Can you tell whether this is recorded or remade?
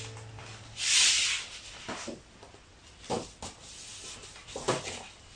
recorded